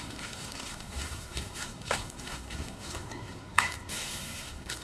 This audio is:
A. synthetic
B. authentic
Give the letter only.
A